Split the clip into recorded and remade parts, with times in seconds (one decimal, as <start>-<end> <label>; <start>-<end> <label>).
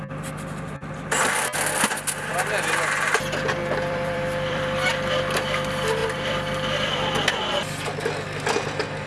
0.0-3.6 recorded; 3.6-5.2 remade; 5.2-6.0 recorded; 6.0-7.3 remade; 7.3-9.1 recorded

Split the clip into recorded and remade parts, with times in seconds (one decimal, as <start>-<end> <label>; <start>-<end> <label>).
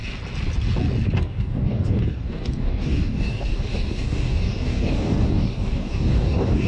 0.0-1.2 recorded; 1.2-6.7 remade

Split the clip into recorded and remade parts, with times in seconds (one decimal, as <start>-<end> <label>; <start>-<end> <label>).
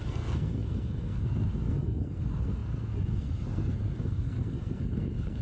0.0-5.4 remade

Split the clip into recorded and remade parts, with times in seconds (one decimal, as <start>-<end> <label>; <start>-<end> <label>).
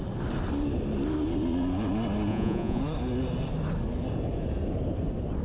0.0-2.3 recorded; 2.3-2.8 remade; 2.8-5.4 recorded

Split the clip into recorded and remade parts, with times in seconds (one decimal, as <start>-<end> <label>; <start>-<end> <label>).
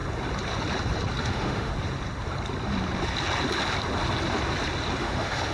0.0-1.2 recorded; 1.2-1.7 remade; 1.7-5.0 recorded; 5.0-5.5 remade